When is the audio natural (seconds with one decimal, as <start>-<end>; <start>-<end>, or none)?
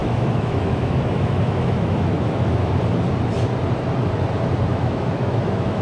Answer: 2.7-4.7